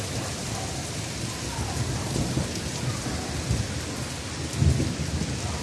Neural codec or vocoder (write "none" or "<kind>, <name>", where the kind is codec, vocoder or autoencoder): none